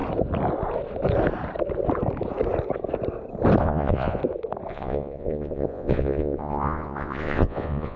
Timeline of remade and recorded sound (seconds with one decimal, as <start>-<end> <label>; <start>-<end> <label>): 0.0-3.6 recorded; 3.6-4.2 remade; 4.2-4.7 recorded; 4.7-8.0 remade